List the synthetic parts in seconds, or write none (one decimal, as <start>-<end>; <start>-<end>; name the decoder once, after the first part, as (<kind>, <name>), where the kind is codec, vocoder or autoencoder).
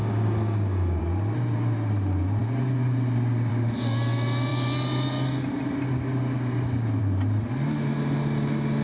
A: 0.0-1.0 (codec, DAC)